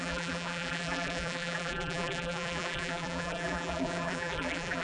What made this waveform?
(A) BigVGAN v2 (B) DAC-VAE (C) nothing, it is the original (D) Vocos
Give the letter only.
A